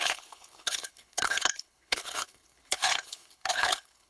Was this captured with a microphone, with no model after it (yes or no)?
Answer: no